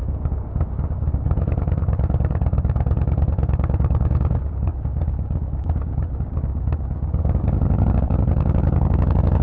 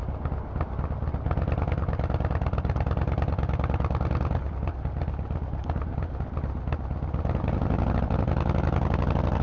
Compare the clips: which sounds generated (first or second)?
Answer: first